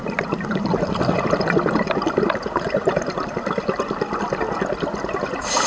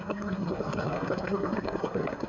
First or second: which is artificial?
second